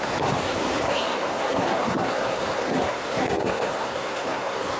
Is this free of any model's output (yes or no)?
no